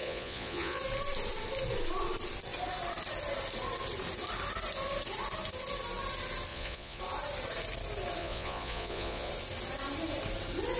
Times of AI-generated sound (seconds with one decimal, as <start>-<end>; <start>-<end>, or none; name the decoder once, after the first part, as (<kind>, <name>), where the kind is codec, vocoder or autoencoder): 0.0-0.8 (vocoder, Vocos); 6.5-7.0; 8.2-9.3